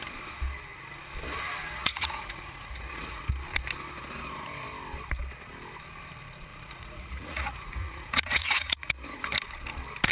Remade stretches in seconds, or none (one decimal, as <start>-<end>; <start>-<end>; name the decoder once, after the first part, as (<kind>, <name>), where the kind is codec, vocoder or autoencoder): 1.7-3.2 (vocoder, Vocos); 6.5-8.9